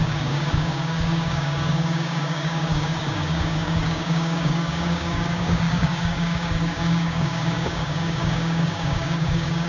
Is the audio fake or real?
fake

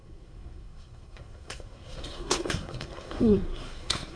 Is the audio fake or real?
fake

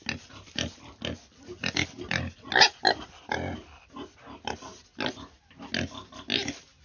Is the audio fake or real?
real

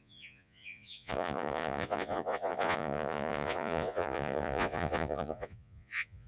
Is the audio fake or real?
fake